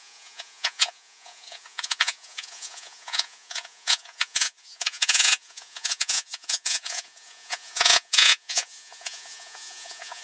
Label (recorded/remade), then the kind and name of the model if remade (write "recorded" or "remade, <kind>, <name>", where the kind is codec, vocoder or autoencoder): remade, vocoder, Vocos